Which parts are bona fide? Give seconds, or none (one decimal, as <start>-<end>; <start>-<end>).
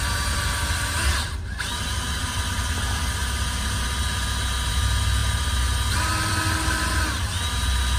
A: 0.0-8.0